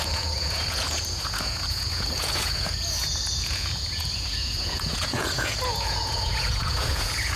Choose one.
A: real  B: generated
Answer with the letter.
B